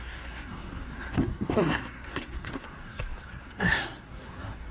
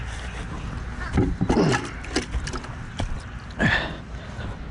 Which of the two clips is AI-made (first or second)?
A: first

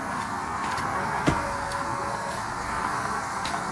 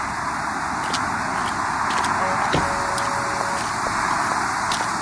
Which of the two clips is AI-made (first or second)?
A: first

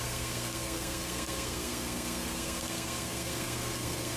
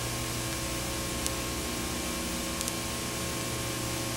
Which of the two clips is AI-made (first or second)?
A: first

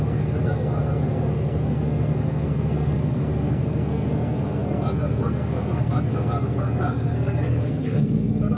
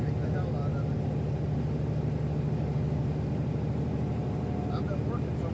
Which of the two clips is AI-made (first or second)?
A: first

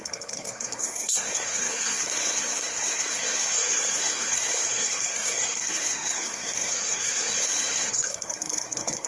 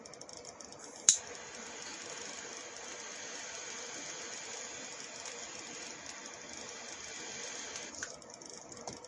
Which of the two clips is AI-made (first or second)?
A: first